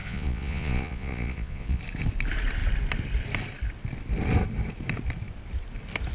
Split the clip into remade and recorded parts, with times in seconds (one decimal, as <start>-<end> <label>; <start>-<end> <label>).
0.0-1.8 remade; 1.8-6.1 recorded